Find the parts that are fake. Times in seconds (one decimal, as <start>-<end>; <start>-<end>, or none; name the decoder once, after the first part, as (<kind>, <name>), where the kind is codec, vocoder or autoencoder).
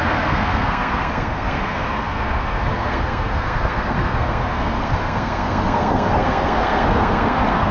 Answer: 0.0-7.7 (codec, SNAC)